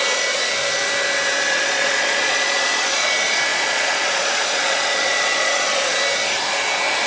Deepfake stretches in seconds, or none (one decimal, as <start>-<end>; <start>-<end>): 1.5-3.1; 3.5-5.8